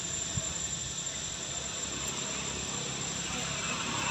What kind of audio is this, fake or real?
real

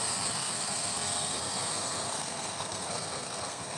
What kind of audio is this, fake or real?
fake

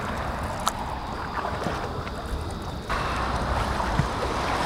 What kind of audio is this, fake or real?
real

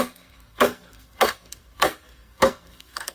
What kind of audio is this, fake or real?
fake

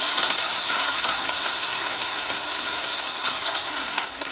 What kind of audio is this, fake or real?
fake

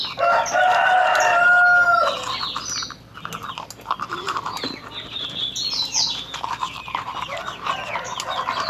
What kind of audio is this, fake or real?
real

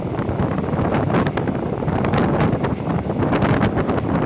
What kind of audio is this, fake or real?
real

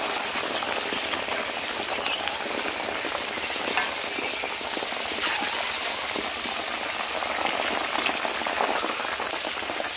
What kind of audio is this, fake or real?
real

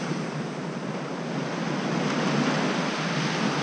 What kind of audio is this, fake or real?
real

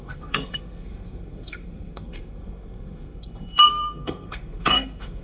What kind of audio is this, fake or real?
fake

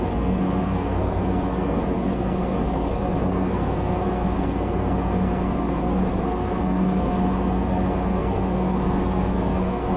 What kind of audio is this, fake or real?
fake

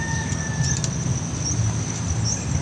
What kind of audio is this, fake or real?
real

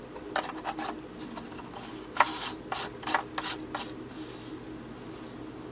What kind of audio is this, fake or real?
real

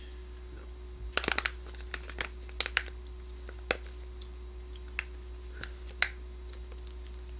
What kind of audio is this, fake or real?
real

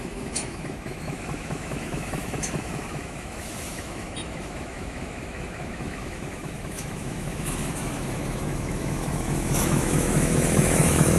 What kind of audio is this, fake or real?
fake